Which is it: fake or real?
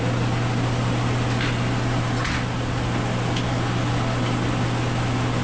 real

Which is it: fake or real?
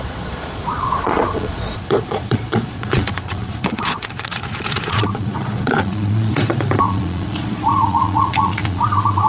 fake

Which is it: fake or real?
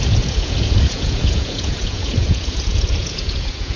fake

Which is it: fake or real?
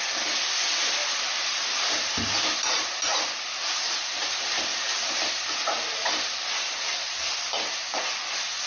real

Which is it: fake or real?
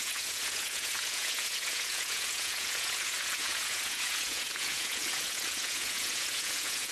fake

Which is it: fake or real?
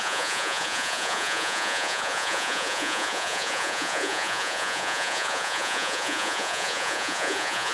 fake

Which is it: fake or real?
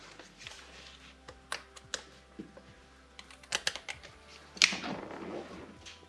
real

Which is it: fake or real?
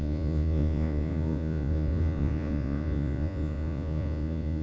fake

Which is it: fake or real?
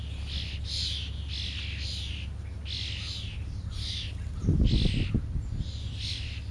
real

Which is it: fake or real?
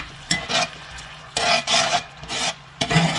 fake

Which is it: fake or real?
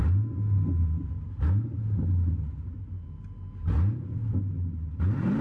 real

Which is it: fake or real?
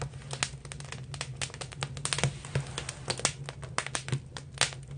real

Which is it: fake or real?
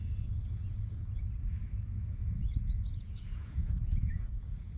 fake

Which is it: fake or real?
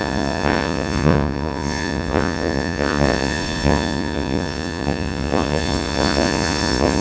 fake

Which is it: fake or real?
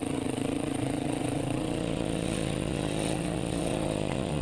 fake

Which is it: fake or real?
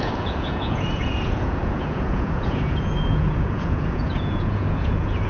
fake